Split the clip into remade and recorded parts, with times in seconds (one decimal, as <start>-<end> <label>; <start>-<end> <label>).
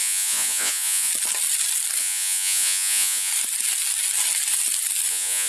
0.0-1.1 remade; 1.1-2.0 recorded; 2.0-3.3 remade; 3.3-5.1 recorded; 5.1-5.5 remade